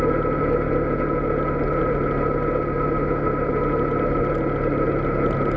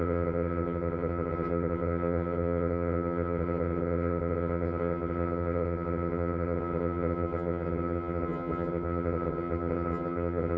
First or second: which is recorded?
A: first